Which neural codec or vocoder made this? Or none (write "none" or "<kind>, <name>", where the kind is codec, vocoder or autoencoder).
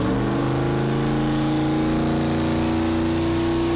none